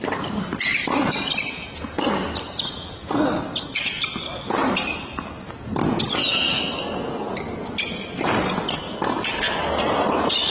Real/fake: real